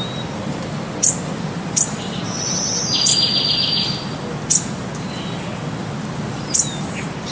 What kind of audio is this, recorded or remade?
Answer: recorded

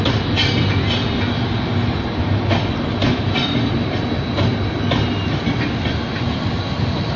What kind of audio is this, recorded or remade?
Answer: recorded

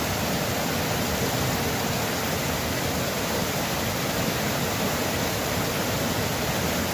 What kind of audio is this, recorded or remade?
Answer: recorded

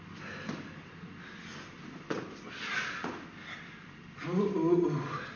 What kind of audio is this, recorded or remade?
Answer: recorded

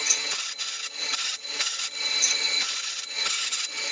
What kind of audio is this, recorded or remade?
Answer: remade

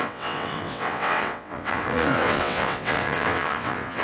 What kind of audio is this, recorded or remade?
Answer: remade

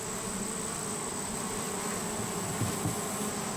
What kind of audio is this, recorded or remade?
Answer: recorded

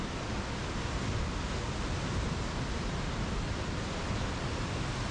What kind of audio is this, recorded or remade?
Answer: recorded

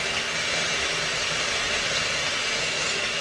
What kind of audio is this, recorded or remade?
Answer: recorded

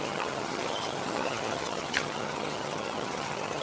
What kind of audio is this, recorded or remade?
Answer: remade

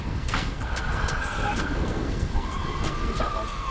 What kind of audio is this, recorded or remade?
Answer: remade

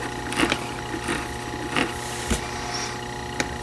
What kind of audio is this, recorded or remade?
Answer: recorded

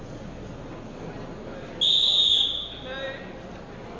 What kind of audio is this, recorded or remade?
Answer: recorded